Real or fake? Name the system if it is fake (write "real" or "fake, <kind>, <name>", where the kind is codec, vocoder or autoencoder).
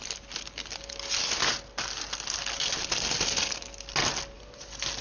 real